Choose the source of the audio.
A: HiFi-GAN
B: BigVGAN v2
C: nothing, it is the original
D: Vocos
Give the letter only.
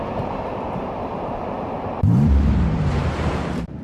B